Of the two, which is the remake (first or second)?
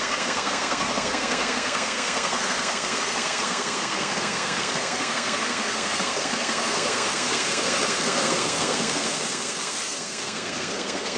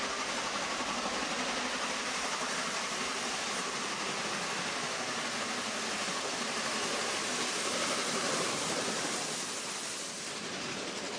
first